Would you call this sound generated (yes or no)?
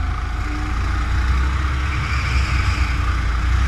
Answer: no